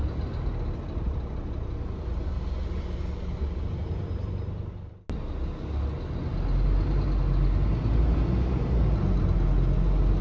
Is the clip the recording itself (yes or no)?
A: yes